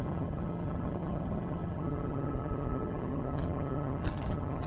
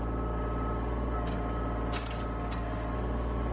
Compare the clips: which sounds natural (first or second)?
second